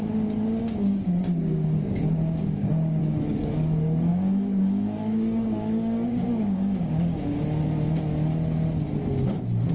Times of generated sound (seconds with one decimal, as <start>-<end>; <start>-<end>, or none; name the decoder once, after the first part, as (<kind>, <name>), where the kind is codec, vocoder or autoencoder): 0.6-3.0 (codec, DAC); 4.1-7.3